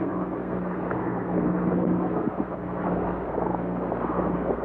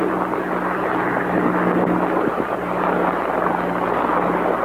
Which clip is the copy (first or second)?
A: first